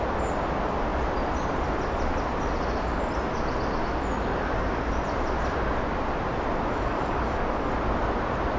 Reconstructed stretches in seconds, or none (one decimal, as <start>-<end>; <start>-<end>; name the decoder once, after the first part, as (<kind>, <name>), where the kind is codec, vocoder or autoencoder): 6.7-7.7 (codec, DAC)